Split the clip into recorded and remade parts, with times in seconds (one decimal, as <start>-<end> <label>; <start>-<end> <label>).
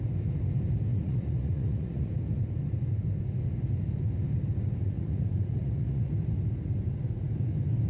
0.0-0.9 recorded; 0.9-2.1 remade; 2.1-4.8 recorded; 4.8-6.1 remade; 6.1-7.9 recorded